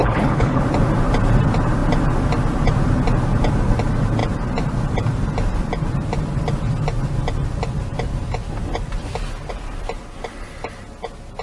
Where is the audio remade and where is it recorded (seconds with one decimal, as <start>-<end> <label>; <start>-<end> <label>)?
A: 0.0-0.6 remade; 0.6-11.4 recorded